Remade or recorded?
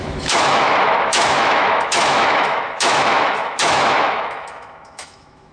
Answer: remade